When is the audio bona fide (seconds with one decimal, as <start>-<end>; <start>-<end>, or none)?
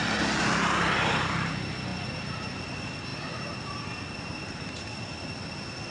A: 0.0-1.9; 2.6-3.1; 4.8-5.9